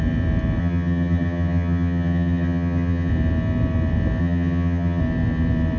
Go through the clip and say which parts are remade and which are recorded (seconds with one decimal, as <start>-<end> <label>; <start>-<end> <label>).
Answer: 0.0-0.6 recorded; 0.6-3.1 remade; 3.1-4.2 recorded; 4.2-5.0 remade; 5.0-5.8 recorded